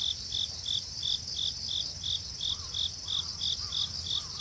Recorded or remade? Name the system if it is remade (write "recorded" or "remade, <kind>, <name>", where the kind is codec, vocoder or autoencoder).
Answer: recorded